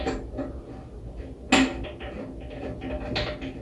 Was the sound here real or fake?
real